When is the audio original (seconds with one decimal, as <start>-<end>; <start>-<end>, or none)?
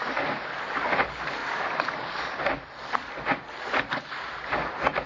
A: 0.0-5.1